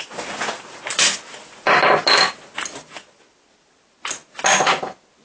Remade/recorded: recorded